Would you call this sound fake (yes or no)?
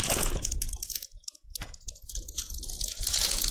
yes